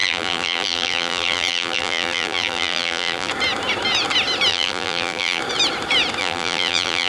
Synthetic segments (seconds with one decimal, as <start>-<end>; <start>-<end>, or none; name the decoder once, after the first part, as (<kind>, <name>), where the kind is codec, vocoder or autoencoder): 0.0-3.3 (vocoder, BigVGAN v2); 4.5-5.4; 6.2-7.1

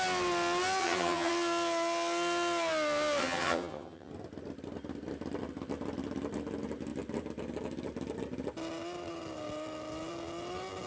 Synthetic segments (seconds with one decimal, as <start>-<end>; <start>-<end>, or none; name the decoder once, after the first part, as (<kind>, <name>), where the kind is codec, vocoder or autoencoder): 0.8-1.3 (vocoder, HiFi-GAN); 3.2-4.1

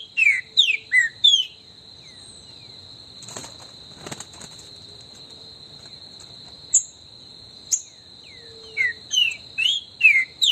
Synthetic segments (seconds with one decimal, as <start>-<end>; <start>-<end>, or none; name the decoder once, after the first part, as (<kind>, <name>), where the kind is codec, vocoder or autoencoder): 0.0-1.1 (vocoder, BigVGAN v2); 2.7-3.4; 7.3-10.5